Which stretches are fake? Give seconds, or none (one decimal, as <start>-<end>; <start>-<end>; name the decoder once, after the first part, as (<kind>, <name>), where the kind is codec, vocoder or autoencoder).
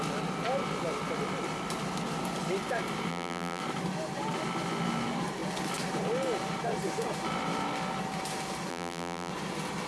3.1-3.6 (vocoder, BigVGAN v2); 8.7-9.3